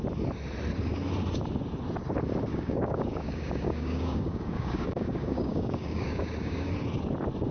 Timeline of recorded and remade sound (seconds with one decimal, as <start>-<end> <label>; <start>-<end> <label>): 0.0-2.5 recorded; 2.5-6.7 remade; 6.7-7.5 recorded